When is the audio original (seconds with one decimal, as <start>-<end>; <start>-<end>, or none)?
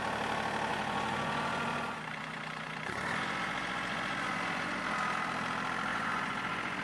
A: 0.0-0.7; 4.8-5.9